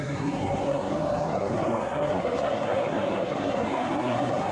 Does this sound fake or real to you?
fake